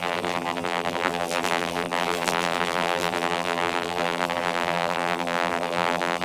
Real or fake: fake